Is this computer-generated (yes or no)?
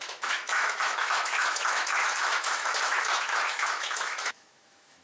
yes